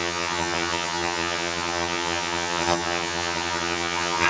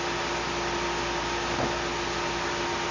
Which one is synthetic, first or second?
first